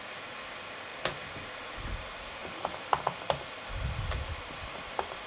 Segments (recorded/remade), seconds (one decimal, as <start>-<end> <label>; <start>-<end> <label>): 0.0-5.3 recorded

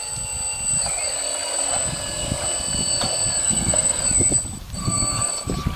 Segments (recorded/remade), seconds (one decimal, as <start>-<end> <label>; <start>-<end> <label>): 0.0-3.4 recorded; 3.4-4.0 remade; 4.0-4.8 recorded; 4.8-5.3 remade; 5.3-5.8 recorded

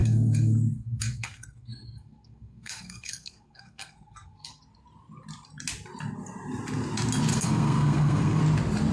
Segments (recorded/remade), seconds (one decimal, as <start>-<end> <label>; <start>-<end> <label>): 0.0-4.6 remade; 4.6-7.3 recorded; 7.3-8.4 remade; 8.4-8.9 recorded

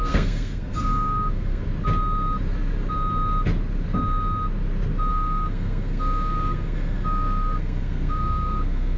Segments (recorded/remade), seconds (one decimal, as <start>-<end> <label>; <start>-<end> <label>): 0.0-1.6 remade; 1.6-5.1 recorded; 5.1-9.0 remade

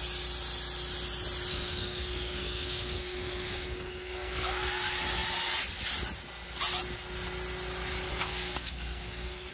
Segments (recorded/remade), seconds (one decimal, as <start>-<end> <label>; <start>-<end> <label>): 0.0-1.5 recorded; 1.5-4.8 remade; 4.8-8.1 recorded; 8.1-9.5 remade

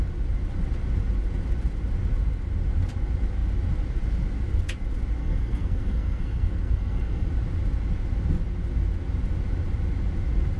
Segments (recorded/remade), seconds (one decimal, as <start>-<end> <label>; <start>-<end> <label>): 0.0-5.2 recorded; 5.2-7.3 remade; 7.3-10.6 recorded

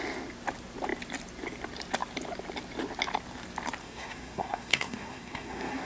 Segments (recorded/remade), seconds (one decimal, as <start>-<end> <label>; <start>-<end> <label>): 0.0-3.8 recorded; 3.8-5.9 remade

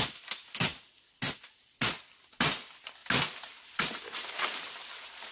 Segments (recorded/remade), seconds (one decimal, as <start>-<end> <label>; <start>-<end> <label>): 0.0-5.3 recorded